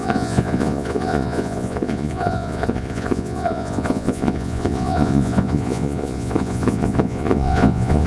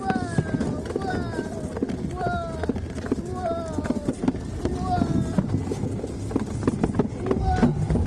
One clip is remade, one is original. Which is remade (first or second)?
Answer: first